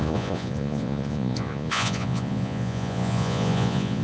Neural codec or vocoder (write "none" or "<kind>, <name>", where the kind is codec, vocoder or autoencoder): vocoder, Vocos